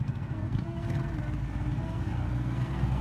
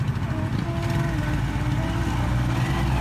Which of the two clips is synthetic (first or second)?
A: first